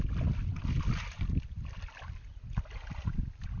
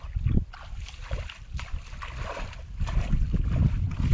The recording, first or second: first